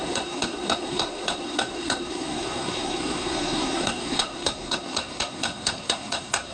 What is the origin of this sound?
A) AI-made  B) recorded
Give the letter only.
A